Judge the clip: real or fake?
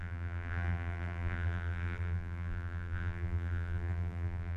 fake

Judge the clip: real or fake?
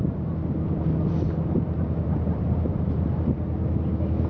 fake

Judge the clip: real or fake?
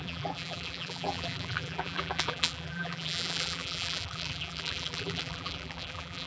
fake